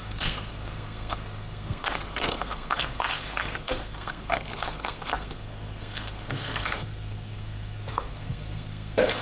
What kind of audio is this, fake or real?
fake